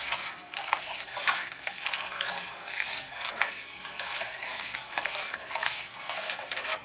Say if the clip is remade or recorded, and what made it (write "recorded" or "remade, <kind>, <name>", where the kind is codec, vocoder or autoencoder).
remade, codec, SNAC